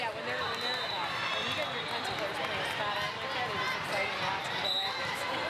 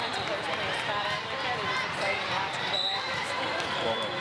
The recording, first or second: first